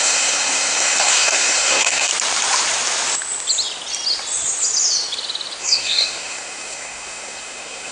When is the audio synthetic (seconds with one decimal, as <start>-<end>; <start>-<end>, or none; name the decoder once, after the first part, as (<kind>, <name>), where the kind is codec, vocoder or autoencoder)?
0.0-2.1 (codec, SNAC); 5.6-7.9